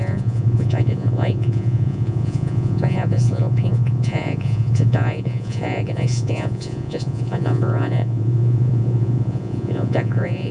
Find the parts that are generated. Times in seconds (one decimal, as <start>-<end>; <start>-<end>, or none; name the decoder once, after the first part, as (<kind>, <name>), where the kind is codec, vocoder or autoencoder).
0.0-10.5 (vocoder, Vocos)